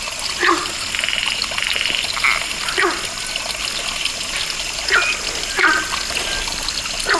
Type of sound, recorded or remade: recorded